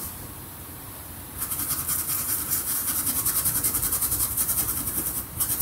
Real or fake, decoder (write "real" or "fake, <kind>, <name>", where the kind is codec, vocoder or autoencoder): fake, vocoder, BigVGAN v2